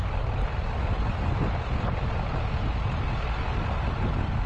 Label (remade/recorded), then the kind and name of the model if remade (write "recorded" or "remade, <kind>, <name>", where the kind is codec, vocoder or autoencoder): recorded